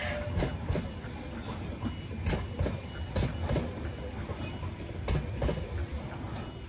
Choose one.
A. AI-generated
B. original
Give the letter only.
B